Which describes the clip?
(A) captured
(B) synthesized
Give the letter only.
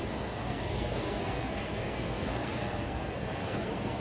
B